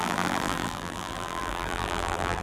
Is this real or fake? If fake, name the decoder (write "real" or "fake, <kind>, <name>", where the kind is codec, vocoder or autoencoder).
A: fake, vocoder, BigVGAN v2